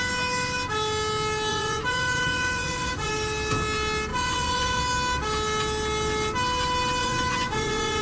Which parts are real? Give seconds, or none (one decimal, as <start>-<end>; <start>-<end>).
0.0-1.5; 3.1-4.1; 4.8-7.0